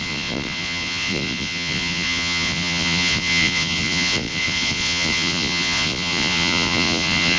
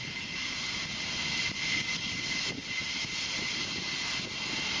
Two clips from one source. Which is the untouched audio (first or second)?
second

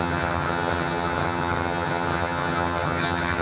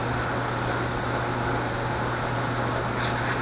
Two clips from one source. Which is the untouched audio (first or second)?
second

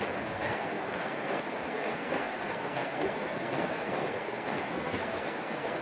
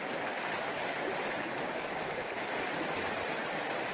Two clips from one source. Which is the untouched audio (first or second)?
second